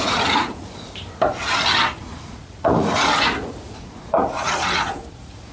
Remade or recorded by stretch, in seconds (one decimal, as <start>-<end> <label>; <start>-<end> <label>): 0.0-0.6 remade; 0.6-2.0 recorded; 2.0-5.5 remade